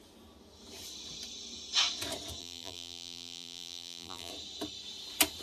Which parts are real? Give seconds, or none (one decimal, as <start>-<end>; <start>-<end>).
0.0-2.4; 4.3-5.4